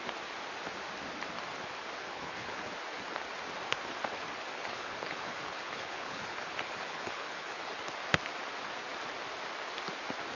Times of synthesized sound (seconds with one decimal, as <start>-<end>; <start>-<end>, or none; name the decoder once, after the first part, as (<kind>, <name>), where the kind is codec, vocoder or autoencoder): 2.0-2.7 (codec, HILCodec); 4.5-7.7